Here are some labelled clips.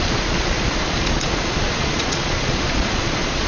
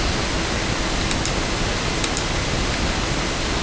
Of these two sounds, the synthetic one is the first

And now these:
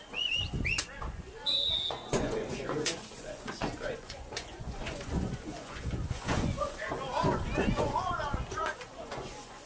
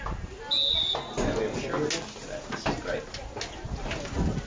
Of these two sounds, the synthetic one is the first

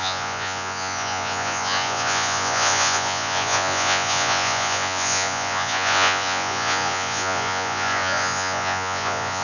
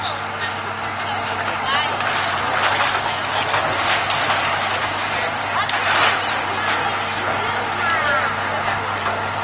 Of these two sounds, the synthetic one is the first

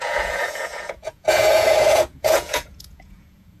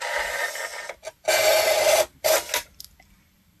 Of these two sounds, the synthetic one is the first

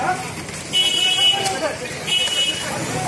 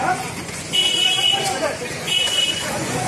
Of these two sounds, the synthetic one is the second